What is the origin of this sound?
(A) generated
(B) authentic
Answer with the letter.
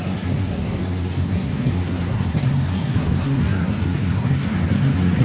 A